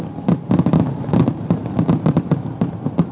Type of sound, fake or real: real